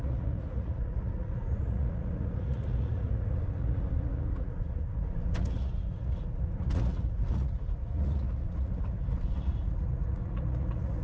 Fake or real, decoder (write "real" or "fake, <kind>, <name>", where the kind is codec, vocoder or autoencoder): fake, vocoder, Vocos